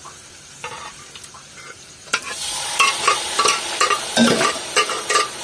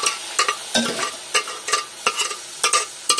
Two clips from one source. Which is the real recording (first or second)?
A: second